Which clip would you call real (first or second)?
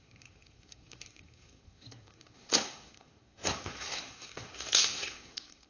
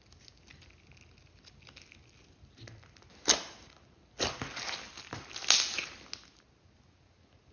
second